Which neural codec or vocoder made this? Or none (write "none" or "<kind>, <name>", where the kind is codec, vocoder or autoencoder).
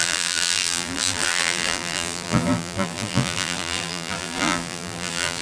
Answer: vocoder, BigVGAN v2